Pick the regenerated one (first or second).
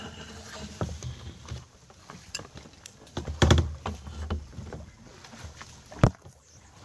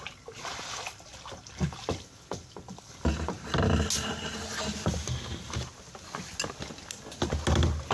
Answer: first